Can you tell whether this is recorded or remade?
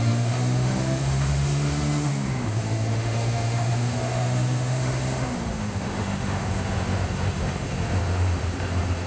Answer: remade